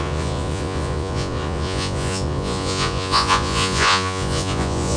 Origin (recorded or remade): remade